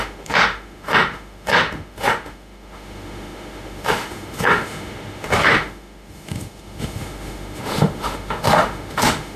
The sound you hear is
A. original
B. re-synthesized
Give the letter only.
B